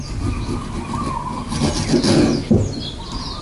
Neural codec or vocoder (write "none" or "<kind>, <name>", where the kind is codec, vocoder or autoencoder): none